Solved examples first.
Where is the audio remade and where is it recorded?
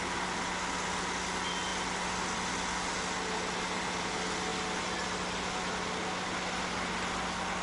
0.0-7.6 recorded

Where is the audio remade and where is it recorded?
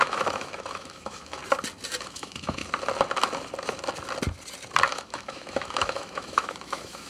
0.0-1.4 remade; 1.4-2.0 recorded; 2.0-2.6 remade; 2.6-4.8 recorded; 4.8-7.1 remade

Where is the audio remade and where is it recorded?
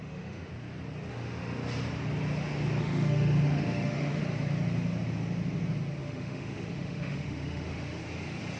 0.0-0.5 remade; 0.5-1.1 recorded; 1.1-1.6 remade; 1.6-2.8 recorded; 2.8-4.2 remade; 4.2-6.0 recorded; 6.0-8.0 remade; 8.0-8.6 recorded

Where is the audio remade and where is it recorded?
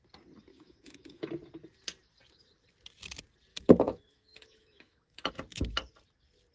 0.0-0.5 recorded; 0.5-1.3 remade; 1.3-3.5 recorded; 3.5-5.3 remade; 5.3-6.5 recorded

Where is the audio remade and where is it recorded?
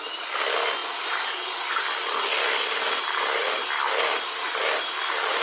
0.0-5.4 recorded